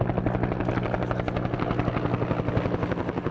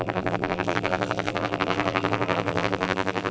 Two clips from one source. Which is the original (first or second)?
first